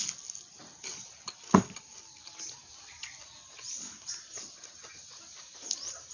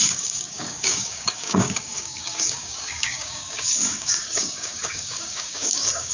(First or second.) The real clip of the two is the first